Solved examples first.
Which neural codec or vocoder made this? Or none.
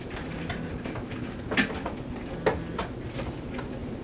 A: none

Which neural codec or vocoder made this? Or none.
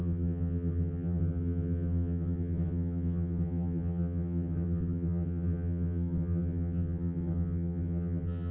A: vocoder, HiFi-GAN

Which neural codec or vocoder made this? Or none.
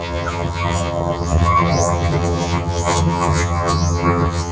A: vocoder, HiFi-GAN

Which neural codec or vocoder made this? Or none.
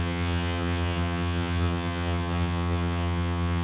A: vocoder, HiFi-GAN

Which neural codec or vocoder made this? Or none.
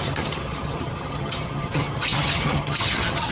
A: vocoder, HiFi-GAN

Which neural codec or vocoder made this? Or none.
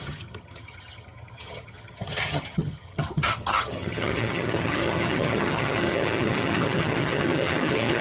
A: vocoder, HiFi-GAN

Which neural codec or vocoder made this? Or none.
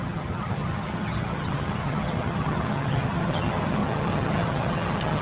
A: vocoder, HiFi-GAN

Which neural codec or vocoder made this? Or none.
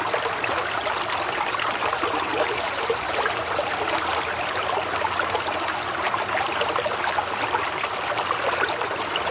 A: none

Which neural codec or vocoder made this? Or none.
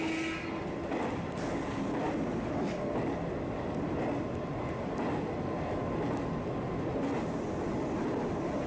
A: none